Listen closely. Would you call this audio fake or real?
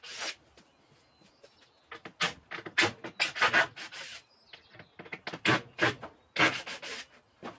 real